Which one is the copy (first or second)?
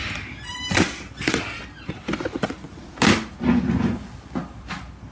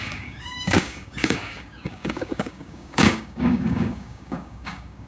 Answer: second